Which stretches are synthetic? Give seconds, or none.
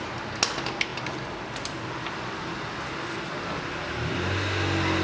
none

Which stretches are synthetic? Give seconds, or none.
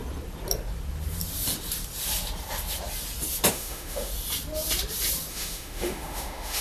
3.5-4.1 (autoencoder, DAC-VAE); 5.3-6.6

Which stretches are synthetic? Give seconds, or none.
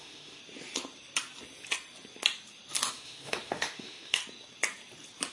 0.0-0.4 (autoencoder, DAC-VAE); 2.9-4.2